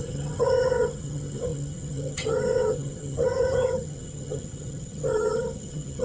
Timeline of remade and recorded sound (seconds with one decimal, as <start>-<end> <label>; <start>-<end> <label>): 0.0-6.0 remade